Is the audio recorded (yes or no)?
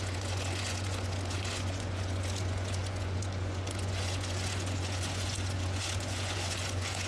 no